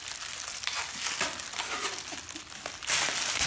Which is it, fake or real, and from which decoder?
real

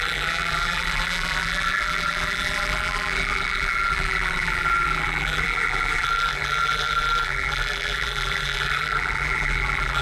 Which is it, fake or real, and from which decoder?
fake, vocoder, BigVGAN v2